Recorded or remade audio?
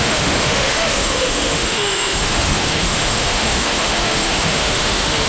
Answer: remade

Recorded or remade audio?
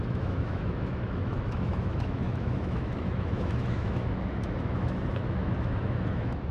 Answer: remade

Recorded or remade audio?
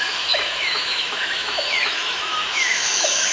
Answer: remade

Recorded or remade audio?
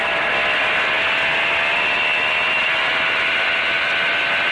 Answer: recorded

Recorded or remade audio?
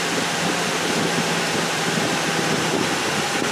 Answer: recorded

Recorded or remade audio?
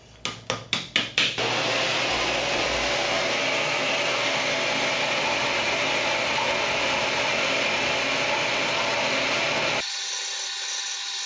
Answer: recorded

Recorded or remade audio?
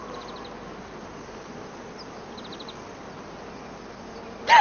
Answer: recorded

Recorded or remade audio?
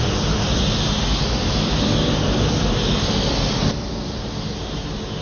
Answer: recorded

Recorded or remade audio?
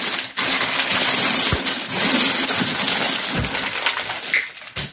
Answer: recorded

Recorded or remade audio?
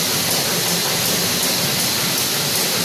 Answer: recorded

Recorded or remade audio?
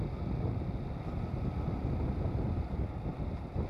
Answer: recorded